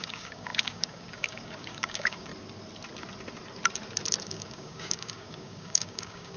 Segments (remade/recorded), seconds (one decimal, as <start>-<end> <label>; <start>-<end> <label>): 0.0-2.3 remade; 2.3-4.2 recorded; 4.2-6.4 remade